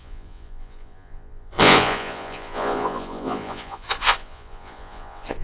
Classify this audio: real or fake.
fake